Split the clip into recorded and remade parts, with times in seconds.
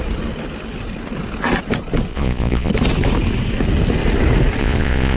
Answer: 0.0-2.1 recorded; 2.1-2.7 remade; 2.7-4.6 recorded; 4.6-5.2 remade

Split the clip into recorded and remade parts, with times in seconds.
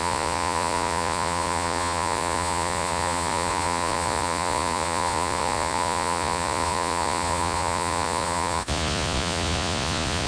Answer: 0.0-10.3 remade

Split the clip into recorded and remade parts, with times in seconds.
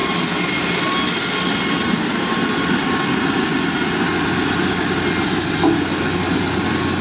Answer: 0.0-7.0 recorded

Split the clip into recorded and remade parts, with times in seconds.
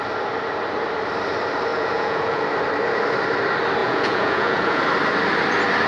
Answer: 0.0-1.7 recorded; 1.7-2.4 remade; 2.4-3.8 recorded; 3.8-4.8 remade; 4.8-5.9 recorded